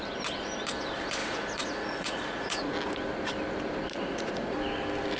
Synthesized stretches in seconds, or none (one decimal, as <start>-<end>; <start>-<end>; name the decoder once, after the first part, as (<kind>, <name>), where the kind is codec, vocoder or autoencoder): 1.2-2.7 (vocoder, Vocos); 3.9-4.6